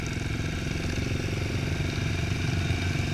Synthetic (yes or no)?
no